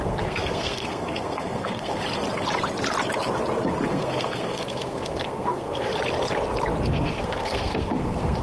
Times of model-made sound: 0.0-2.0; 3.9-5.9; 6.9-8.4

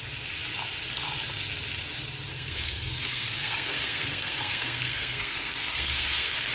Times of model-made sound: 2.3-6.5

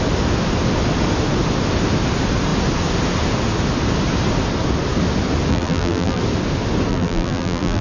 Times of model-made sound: 5.5-6.2; 6.9-7.8